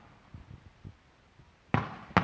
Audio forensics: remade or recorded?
recorded